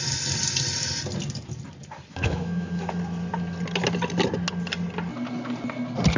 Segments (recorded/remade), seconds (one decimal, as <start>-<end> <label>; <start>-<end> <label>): 0.0-2.1 recorded; 2.1-2.9 remade; 2.9-6.2 recorded